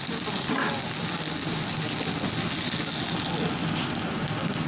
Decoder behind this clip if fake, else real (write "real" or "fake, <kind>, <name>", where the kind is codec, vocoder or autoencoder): real